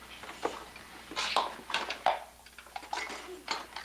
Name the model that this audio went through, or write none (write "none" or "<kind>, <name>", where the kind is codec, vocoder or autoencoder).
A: none